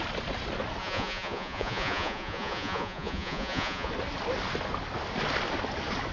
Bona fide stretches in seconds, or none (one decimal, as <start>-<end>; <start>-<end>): 0.0-0.8; 3.9-6.1